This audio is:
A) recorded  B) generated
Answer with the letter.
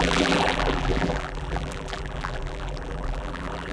B